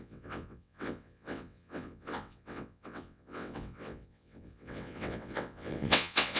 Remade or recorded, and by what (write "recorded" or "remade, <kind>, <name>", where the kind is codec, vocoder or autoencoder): remade, vocoder, WaveNeXt